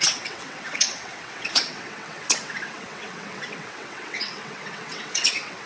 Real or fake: fake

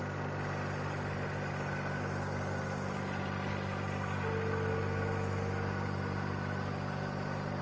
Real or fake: real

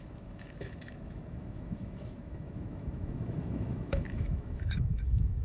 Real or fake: fake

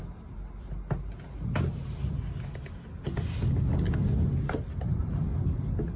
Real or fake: real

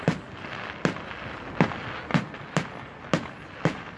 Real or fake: real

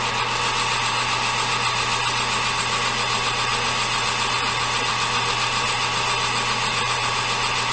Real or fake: real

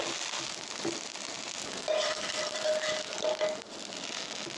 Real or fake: real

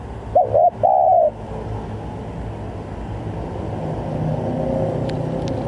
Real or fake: real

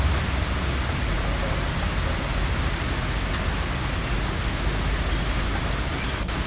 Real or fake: real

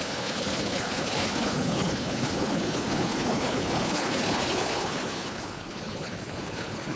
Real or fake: fake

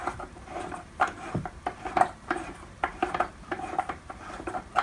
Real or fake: fake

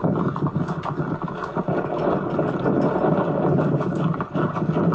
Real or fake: real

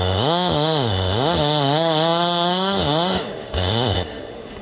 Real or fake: fake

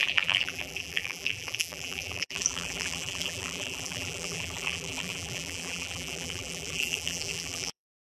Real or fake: fake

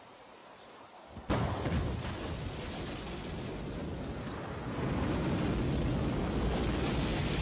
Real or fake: real